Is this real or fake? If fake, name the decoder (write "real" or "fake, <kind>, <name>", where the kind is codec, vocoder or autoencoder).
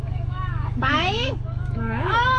fake, codec, DAC